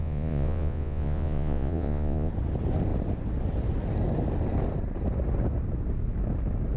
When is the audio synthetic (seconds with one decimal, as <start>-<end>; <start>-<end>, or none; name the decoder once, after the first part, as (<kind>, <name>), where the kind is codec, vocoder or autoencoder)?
0.0-2.3 (vocoder, Vocos)